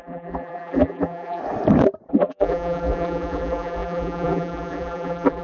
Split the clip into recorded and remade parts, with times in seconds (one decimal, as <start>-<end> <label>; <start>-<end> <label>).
0.0-1.4 remade; 1.4-2.1 recorded; 2.1-5.4 remade